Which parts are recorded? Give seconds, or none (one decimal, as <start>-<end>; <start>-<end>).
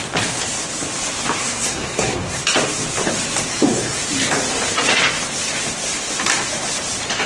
0.0-1.4; 2.4-3.5; 4.0-7.3